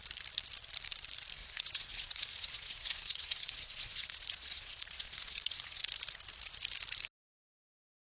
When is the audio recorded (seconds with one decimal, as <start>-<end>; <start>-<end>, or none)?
0.0-1.4; 5.9-8.2